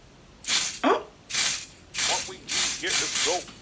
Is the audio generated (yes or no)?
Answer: no